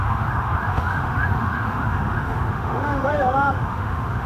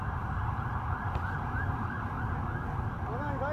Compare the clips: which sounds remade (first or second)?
first